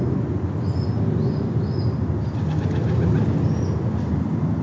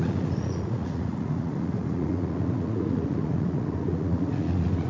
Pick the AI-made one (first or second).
second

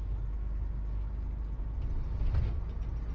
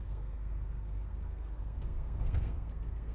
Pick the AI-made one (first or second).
second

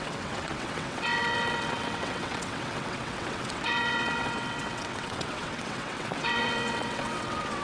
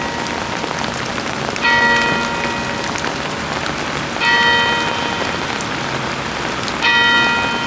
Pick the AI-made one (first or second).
first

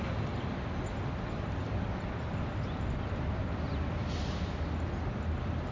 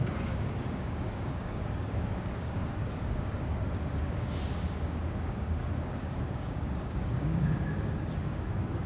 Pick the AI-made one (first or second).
second